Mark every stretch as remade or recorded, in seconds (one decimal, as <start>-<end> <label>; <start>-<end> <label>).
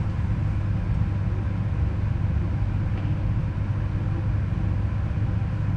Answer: 0.0-5.8 recorded